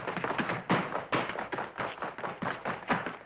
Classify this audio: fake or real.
real